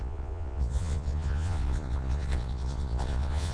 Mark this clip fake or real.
fake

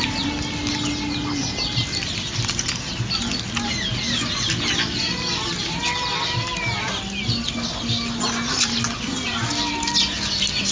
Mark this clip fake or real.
real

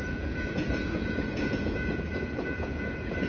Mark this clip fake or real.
fake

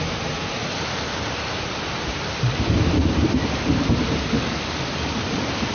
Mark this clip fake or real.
real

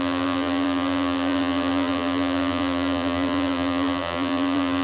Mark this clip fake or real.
fake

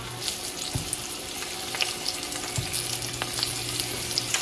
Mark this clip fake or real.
real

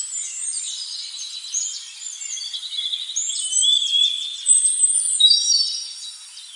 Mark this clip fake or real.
fake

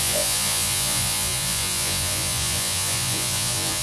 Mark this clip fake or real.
fake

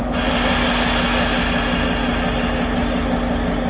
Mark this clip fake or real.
real